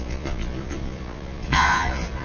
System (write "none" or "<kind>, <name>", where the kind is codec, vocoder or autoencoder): vocoder, Vocos